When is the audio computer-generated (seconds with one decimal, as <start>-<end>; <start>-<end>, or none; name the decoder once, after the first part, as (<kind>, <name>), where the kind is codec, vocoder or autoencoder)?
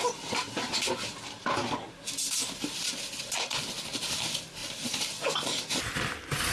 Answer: none